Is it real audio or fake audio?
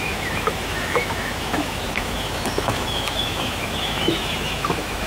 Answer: fake